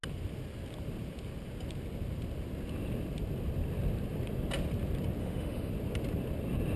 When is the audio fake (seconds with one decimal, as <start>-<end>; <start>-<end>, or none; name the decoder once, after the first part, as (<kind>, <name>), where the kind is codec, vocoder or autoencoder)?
5.2-5.7 (autoencoder, DAC-VAE)